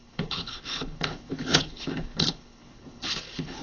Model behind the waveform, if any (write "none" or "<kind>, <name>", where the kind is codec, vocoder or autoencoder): codec, HILCodec